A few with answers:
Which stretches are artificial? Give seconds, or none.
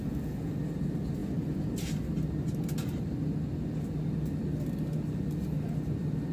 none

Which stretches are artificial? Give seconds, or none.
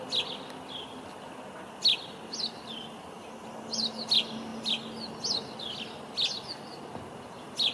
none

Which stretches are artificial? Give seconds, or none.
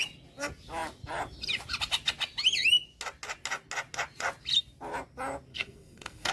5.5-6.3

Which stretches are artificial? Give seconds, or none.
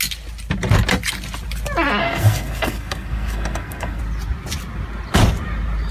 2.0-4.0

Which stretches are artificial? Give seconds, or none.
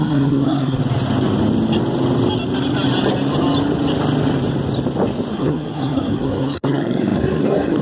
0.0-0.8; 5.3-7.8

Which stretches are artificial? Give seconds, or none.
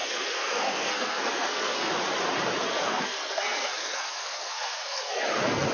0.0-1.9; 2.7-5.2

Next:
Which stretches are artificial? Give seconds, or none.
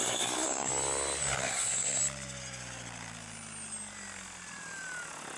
0.0-0.7; 1.4-2.0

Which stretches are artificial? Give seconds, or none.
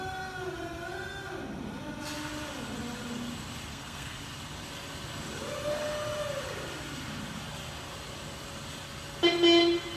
3.7-4.2